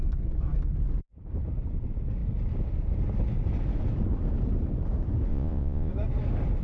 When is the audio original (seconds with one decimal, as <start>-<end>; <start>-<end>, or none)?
0.0-5.3; 5.9-6.6